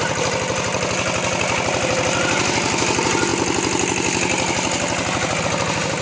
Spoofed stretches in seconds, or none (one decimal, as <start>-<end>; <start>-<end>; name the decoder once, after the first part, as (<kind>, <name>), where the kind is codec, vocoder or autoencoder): 0.0-3.3 (vocoder, BigVGAN v2); 5.4-6.0